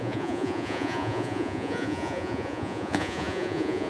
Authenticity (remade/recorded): remade